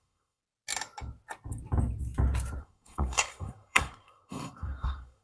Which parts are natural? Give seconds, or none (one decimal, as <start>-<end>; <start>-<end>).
0.4-2.6

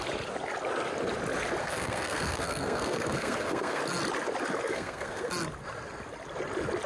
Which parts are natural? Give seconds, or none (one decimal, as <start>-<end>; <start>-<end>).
0.0-1.6; 3.8-4.7; 5.3-6.9

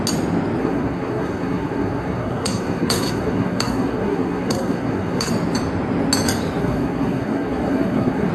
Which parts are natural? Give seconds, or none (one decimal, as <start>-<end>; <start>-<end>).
0.0-0.6; 5.3-6.6

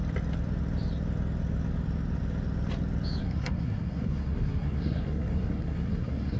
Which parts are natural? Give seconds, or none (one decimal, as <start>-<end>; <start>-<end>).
0.0-3.2